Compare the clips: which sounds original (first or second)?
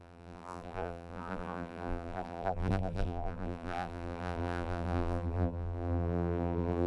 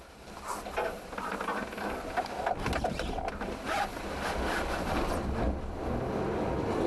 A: second